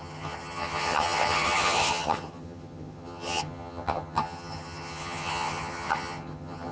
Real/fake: fake